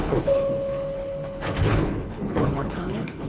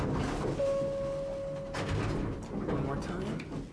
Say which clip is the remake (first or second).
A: first